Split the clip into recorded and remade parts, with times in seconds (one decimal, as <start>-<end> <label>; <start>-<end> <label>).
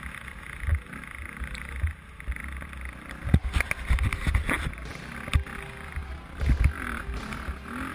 0.0-7.9 recorded